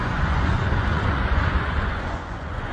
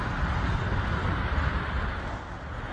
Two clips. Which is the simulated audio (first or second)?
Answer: first